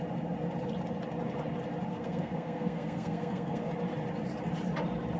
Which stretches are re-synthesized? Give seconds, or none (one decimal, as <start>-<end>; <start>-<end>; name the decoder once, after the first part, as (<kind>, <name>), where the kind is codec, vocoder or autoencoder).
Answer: 1.9-3.7 (codec, SNAC)